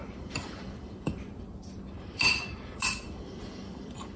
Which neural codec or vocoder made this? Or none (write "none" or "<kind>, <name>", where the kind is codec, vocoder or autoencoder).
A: vocoder, BigVGAN v2